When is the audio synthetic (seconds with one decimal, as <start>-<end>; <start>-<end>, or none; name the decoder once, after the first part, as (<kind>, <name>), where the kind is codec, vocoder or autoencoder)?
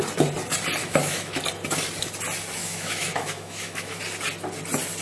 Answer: 0.8-1.4 (autoencoder, DAC-VAE); 2.6-4.0